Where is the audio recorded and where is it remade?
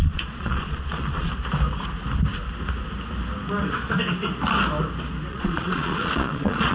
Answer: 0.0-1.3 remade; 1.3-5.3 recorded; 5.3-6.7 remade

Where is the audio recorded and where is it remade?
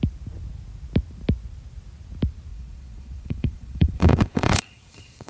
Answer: 0.0-2.5 recorded; 2.5-5.3 remade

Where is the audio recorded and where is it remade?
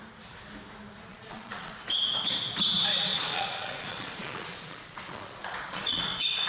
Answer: 0.0-1.1 recorded; 1.1-1.7 remade; 1.7-3.1 recorded; 3.1-6.0 remade; 6.0-6.5 recorded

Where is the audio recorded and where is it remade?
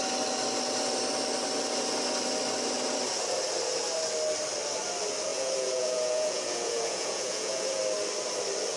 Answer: 0.0-5.3 recorded; 5.3-7.8 remade; 7.8-8.8 recorded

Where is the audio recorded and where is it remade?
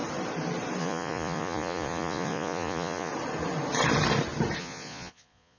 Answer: 0.0-0.8 recorded; 0.8-3.1 remade; 3.1-4.6 recorded; 4.6-5.6 remade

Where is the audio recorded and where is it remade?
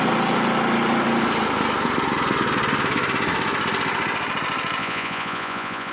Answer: 0.0-4.8 recorded; 4.8-5.9 remade